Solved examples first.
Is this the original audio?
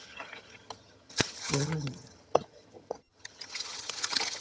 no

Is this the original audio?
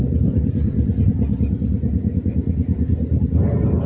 yes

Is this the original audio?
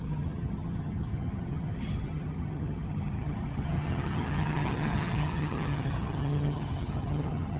no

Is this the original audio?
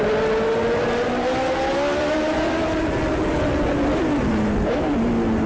yes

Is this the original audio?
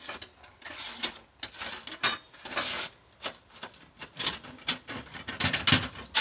yes